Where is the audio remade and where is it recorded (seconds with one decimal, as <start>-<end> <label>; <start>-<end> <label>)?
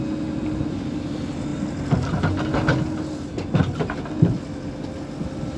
0.0-5.6 recorded